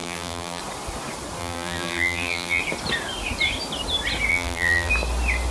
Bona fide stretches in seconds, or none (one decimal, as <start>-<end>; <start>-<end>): 0.6-1.4; 2.6-4.3; 4.9-5.5